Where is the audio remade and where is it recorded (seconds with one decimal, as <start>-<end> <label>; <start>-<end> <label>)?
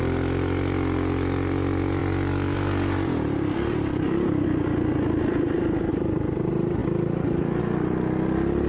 0.0-8.7 recorded